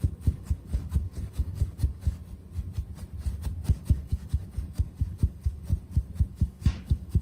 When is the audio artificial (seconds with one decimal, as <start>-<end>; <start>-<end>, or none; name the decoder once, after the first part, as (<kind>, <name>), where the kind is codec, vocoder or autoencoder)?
0.0-2.2 (codec, DAC); 3.8-5.7; 6.3-7.2